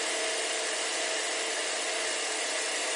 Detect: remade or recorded recorded